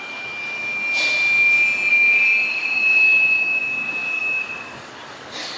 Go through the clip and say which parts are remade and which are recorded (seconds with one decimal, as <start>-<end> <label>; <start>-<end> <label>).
0.0-0.8 remade; 0.8-1.9 recorded; 1.9-5.6 remade